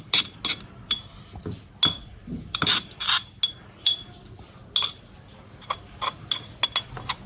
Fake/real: real